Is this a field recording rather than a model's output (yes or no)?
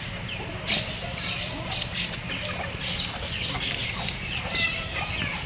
yes